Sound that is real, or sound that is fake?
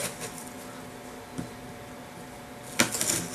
real